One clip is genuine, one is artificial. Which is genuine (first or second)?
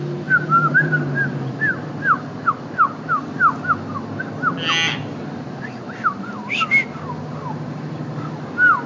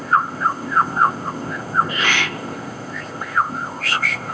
first